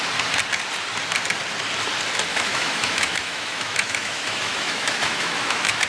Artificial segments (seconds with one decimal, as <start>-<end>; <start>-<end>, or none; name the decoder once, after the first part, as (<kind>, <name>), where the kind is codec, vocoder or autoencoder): 2.3-5.9 (autoencoder, DAC-VAE)